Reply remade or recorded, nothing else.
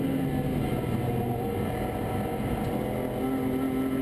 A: recorded